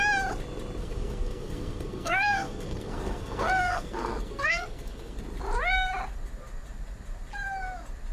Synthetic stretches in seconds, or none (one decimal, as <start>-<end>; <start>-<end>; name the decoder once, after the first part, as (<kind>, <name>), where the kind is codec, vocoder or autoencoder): 0.8-5.2 (codec, SNAC)